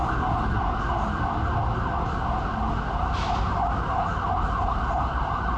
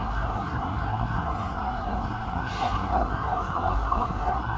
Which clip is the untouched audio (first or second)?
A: first